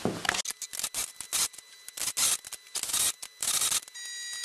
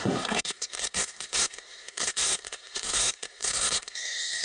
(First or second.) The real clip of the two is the first